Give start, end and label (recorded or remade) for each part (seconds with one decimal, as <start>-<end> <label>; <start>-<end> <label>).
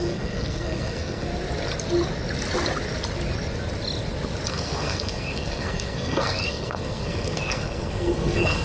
0.0-1.3 remade; 1.3-4.5 recorded; 4.5-8.6 remade